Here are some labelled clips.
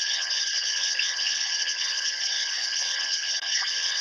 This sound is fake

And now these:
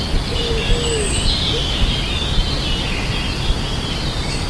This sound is real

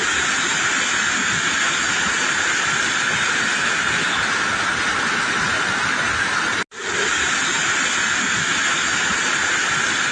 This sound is real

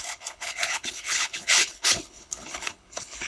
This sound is fake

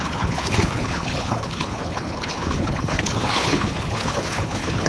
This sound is fake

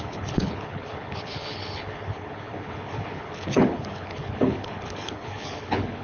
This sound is fake